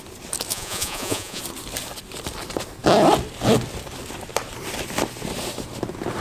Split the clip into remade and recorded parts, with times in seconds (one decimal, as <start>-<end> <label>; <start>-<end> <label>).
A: 0.0-0.5 recorded; 0.5-1.4 remade; 1.4-6.2 recorded